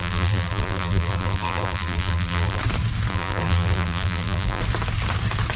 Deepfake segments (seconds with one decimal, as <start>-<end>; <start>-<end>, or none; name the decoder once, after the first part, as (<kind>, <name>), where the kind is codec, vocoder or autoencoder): 0.0-2.6 (vocoder, BigVGAN v2); 3.1-4.6